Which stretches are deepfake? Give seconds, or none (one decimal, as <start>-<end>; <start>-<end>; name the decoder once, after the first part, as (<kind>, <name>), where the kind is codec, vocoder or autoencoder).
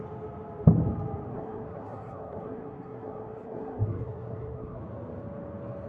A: 1.3-4.8 (codec, SNAC)